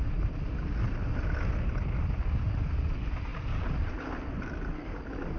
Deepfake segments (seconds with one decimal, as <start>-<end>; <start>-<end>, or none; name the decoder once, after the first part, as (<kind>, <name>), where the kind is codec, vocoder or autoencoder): none